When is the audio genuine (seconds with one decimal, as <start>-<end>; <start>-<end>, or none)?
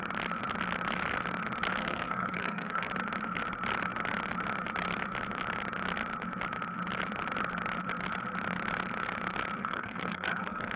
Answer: 0.0-1.8; 2.9-9.6